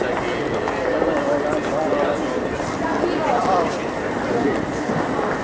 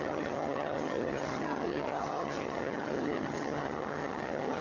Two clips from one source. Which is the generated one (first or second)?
second